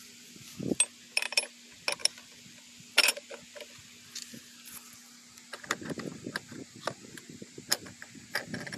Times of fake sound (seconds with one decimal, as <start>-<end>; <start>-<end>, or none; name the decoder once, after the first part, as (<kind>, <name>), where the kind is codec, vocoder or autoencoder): none